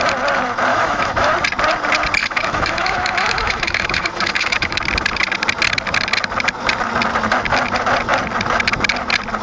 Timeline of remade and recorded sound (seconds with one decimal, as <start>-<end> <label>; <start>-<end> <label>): 0.0-0.7 recorded; 0.7-1.3 remade; 1.3-2.2 recorded; 2.2-4.8 remade; 4.8-9.4 recorded